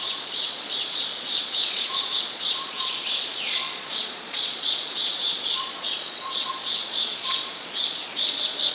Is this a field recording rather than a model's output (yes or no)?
no